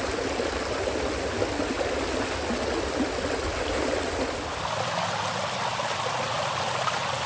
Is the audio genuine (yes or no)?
yes